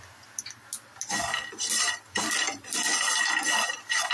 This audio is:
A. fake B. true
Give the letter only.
B